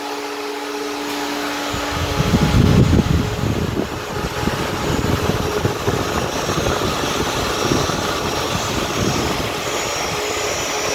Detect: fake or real real